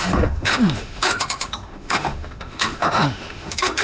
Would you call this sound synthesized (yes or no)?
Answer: yes